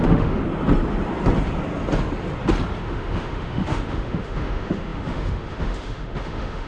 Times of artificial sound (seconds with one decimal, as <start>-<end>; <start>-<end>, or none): 0.0-0.4; 2.8-6.7

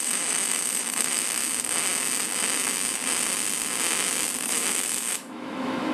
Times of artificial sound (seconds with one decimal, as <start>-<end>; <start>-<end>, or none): 0.0-1.4; 4.4-5.9